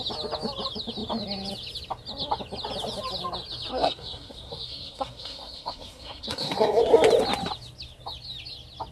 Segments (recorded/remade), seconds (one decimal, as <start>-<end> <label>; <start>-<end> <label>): 0.0-3.7 recorded; 3.7-6.8 remade; 6.8-8.9 recorded